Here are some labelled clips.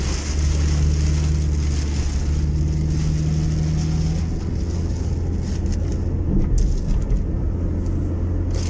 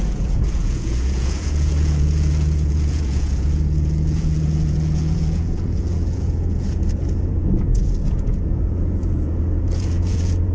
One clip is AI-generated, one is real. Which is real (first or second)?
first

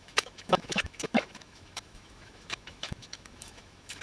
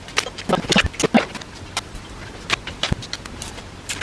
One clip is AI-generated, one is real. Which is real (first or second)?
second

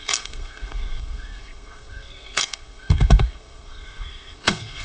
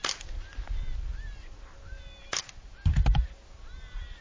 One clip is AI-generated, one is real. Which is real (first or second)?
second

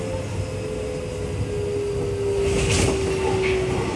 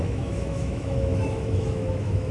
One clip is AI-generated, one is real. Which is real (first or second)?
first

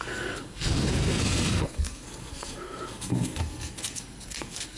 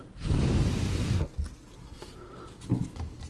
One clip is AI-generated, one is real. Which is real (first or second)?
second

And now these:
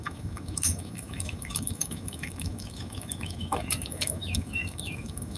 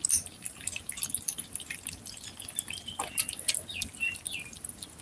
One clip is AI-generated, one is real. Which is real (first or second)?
second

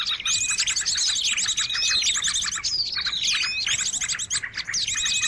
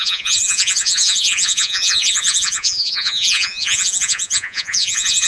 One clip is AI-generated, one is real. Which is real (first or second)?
first